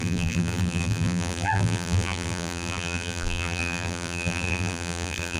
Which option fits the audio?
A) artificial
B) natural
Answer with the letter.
A